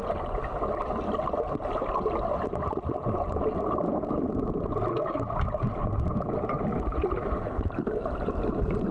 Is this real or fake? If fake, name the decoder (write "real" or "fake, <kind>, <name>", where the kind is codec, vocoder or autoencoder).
real